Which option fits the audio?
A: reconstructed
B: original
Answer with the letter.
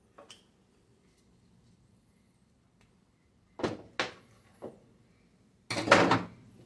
B